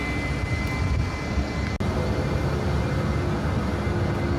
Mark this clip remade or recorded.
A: recorded